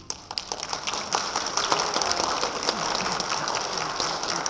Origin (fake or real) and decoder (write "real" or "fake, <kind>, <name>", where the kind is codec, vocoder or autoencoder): real